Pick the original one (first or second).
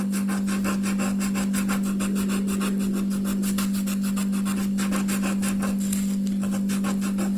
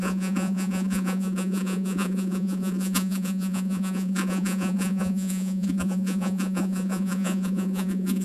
first